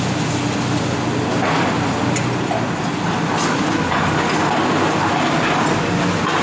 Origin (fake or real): real